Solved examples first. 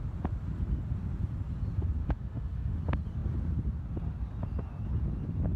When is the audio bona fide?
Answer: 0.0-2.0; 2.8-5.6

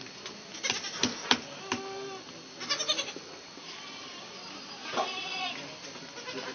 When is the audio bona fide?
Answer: 0.0-4.8; 5.6-6.5

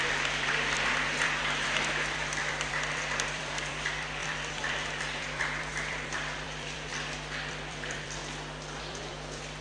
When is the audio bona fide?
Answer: 6.9-7.5; 8.2-8.8